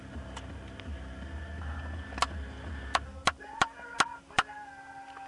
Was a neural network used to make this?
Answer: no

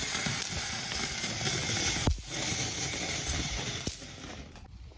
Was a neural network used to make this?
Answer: no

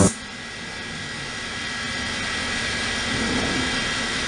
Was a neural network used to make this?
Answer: no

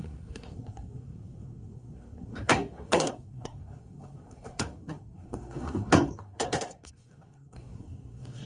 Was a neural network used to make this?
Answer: yes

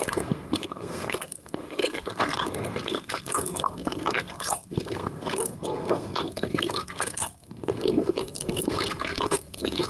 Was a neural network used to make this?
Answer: yes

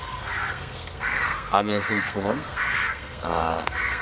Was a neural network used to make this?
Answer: yes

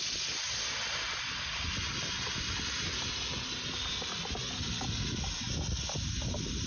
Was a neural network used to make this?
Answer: no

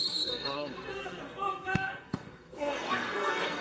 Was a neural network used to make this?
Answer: yes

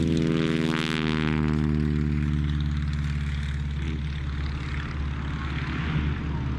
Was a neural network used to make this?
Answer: no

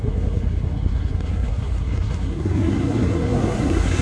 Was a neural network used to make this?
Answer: yes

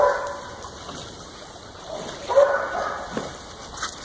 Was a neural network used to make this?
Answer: no